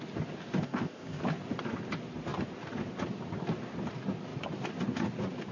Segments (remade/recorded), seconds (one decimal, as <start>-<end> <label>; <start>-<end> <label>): 0.0-0.6 recorded; 0.6-1.2 remade; 1.2-5.5 recorded